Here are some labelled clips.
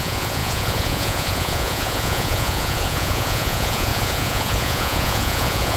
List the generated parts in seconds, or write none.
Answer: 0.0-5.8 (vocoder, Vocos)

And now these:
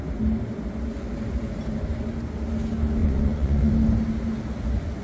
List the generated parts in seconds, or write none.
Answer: 3.0-3.7 (vocoder, Vocos)

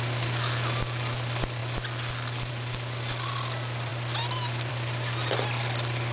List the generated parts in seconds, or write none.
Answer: none

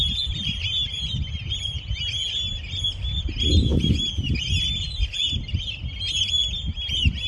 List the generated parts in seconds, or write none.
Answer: none

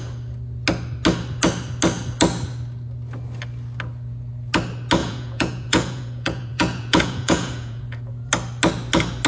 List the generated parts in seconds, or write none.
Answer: 5.0-8.3 (vocoder, Vocos)

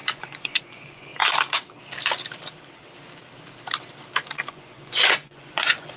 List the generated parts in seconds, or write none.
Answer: 0.0-1.1 (vocoder, Vocos); 4.5-6.0

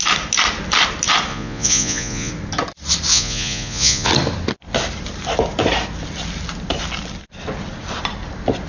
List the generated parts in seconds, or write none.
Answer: 1.3-2.3 (vocoder, Vocos); 3.1-4.1

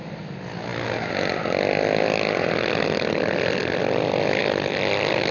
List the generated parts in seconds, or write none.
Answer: none